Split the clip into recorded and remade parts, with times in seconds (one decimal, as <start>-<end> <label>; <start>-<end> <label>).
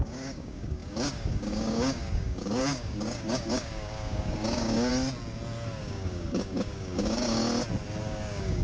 0.0-4.9 remade; 4.9-5.8 recorded; 5.8-7.4 remade; 7.4-8.0 recorded; 8.0-8.6 remade